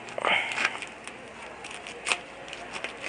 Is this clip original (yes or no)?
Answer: yes